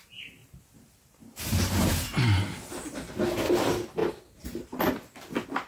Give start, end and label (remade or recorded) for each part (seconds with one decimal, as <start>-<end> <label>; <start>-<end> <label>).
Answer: 0.0-0.4 recorded; 0.4-1.9 remade; 1.9-4.0 recorded; 4.0-4.9 remade; 4.9-5.7 recorded